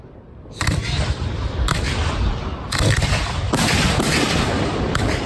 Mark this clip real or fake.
real